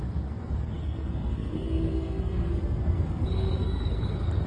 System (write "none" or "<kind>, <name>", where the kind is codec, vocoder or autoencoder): codec, SNAC